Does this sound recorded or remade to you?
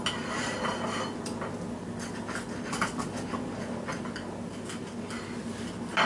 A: recorded